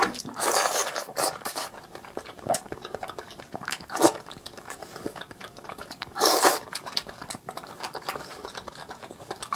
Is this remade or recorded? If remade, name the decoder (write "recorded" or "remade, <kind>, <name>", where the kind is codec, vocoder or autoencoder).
remade, codec, DAC